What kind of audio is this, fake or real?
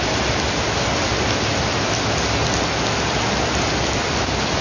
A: real